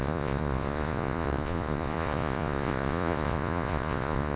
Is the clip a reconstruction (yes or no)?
yes